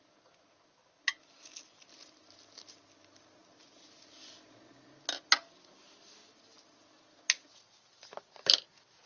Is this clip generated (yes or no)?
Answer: no